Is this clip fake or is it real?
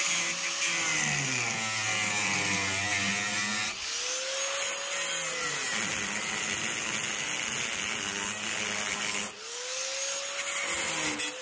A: real